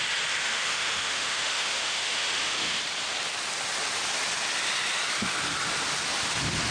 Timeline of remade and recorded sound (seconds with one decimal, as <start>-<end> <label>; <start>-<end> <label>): 0.0-0.4 recorded; 0.4-2.8 remade; 2.8-6.7 recorded

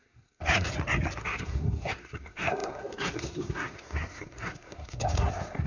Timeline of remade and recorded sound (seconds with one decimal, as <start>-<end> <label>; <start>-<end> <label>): 0.0-0.7 remade; 0.7-1.2 recorded; 1.2-5.7 remade

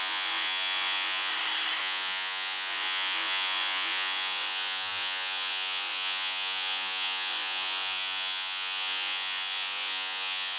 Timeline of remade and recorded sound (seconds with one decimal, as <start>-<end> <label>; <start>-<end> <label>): 0.0-1.3 remade; 1.3-1.8 recorded; 1.8-10.6 remade

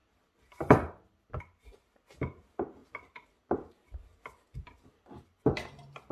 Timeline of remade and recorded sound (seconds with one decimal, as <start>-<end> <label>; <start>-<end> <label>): 0.0-1.4 remade; 1.4-2.8 recorded; 2.8-6.1 remade

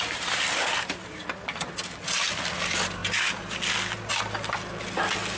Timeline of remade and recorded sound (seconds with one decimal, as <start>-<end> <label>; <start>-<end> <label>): 0.0-5.4 recorded